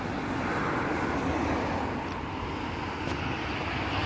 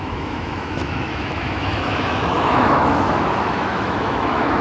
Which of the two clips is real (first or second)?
first